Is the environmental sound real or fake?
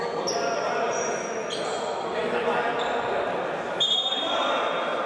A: real